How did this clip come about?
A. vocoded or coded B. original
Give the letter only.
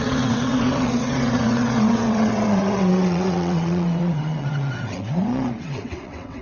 A